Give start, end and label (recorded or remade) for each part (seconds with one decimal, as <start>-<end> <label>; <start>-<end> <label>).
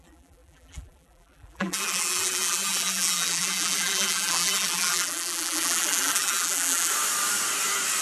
0.0-6.9 remade; 6.9-8.0 recorded